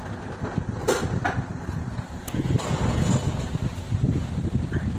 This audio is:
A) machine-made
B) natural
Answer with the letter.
B